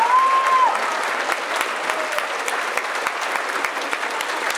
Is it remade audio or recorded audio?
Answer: recorded